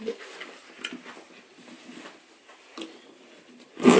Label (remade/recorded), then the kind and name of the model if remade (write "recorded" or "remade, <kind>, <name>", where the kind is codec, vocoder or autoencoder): recorded